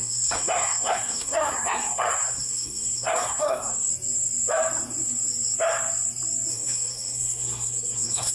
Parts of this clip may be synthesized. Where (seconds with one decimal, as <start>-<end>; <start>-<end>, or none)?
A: 0.0-3.9; 6.5-8.3